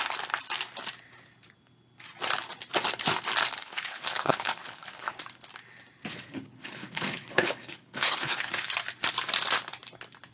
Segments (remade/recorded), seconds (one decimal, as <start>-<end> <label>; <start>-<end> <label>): 0.0-3.6 recorded; 3.6-5.2 remade; 5.2-6.1 recorded; 6.1-8.7 remade; 8.7-10.3 recorded